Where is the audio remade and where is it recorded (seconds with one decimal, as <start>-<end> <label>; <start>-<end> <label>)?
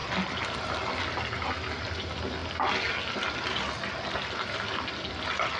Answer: 0.0-5.6 recorded